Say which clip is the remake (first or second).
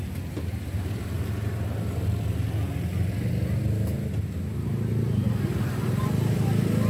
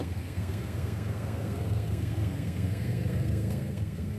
second